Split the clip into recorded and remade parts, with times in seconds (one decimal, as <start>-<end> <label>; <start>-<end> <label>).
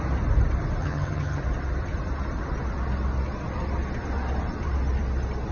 0.0-0.8 recorded; 0.8-1.4 remade; 1.4-5.5 recorded